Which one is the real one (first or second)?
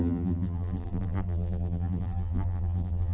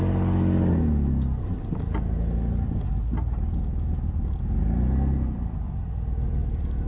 second